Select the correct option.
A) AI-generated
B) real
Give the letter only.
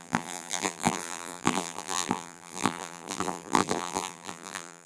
A